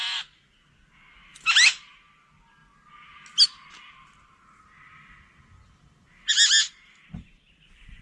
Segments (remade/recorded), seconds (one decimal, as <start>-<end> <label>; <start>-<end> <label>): 0.0-8.0 recorded